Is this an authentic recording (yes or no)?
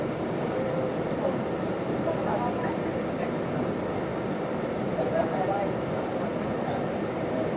no